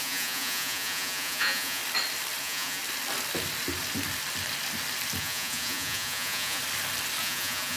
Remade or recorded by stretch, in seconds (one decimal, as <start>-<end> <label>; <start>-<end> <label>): 0.0-1.8 remade; 1.8-2.4 recorded; 2.4-2.8 remade; 2.8-5.2 recorded; 5.2-6.6 remade; 6.6-7.2 recorded; 7.2-7.8 remade